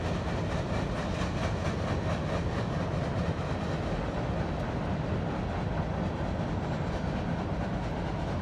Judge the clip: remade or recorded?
recorded